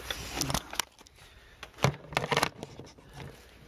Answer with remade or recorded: recorded